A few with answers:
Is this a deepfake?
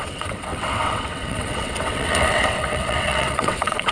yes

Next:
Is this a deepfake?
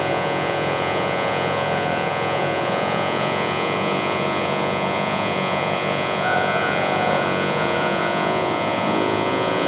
yes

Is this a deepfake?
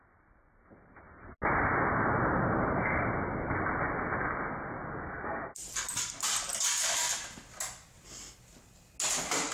no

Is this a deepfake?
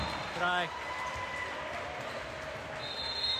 no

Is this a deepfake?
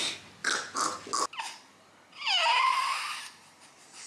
no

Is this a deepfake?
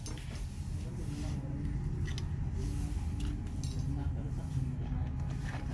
no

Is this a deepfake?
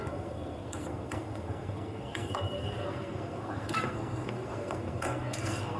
yes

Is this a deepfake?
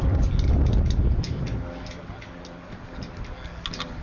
no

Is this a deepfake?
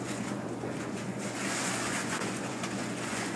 yes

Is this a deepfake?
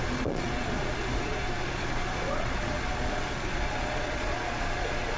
yes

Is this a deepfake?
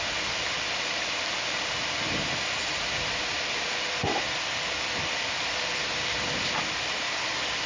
yes